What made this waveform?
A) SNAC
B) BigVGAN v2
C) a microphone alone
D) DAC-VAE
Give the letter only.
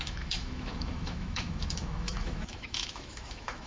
D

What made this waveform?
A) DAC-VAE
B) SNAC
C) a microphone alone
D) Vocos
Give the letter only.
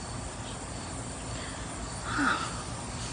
C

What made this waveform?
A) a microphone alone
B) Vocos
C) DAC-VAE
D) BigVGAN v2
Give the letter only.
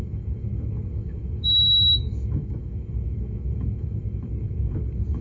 C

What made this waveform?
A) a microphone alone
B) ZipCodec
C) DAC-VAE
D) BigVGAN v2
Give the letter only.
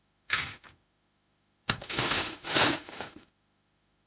C